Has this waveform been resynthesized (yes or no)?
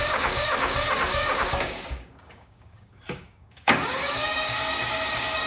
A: yes